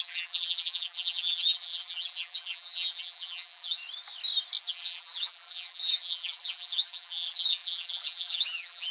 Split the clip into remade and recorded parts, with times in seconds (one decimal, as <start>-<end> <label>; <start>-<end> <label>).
0.0-3.8 remade; 3.8-4.6 recorded; 4.6-8.9 remade